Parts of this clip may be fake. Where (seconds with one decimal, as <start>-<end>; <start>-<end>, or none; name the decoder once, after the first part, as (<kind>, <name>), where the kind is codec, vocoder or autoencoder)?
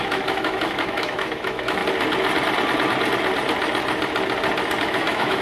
0.0-1.8 (autoencoder, DAC-VAE); 4.8-5.4